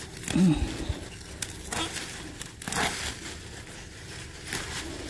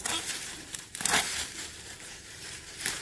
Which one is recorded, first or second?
first